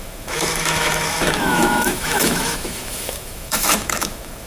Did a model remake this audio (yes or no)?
yes